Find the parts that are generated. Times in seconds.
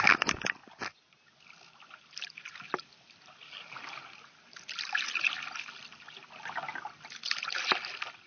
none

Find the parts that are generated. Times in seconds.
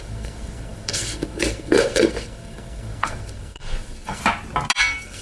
0.0-4.2 (codec, SNAC); 4.8-5.2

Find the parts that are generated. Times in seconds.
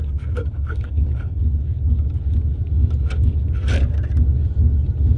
0.4-1.4 (codec, SNAC)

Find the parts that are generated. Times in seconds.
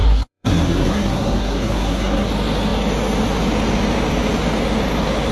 0.0-2.3 (codec, SNAC)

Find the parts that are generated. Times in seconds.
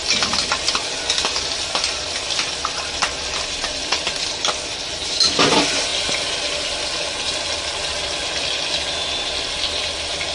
none